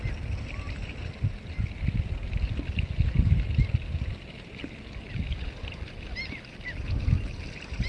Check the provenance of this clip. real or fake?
real